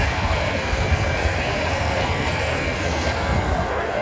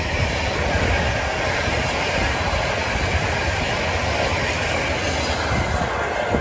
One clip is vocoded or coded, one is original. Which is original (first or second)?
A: second